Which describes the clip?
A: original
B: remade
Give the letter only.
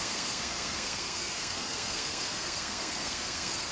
B